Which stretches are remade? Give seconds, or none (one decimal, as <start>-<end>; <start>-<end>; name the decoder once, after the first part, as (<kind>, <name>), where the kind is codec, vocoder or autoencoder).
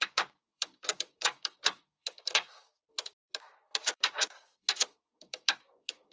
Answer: 0.0-6.1 (codec, DAC)